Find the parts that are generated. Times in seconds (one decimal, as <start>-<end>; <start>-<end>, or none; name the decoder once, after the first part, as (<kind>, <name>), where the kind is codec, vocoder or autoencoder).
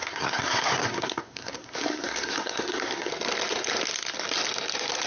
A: 0.0-3.1 (codec, SNAC)